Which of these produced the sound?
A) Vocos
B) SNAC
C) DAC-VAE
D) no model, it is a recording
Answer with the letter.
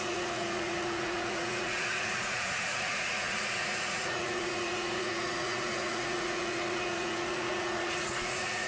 A